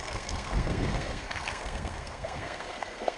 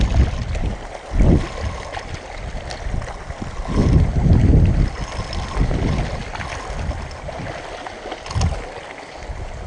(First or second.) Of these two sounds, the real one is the second